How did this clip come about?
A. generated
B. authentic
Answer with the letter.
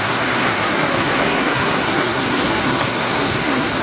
A